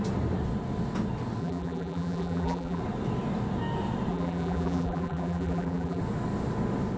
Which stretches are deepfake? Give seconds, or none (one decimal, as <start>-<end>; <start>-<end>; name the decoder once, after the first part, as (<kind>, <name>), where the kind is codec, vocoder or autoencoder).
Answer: 1.4-2.8 (vocoder, BigVGAN v2); 4.1-6.0